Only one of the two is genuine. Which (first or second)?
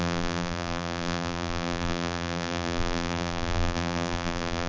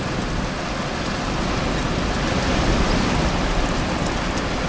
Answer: second